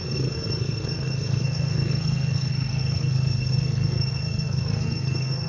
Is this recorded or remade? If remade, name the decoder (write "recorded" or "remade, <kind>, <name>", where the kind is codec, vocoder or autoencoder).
remade, codec, SNAC